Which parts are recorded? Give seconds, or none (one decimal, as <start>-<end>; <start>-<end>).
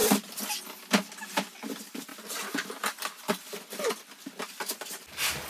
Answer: 0.0-5.5